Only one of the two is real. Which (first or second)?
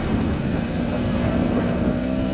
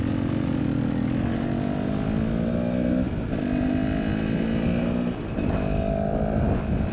second